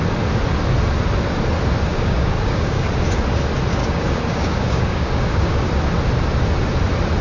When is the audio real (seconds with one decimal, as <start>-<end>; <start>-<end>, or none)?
0.0-1.9; 2.9-3.8; 5.7-7.2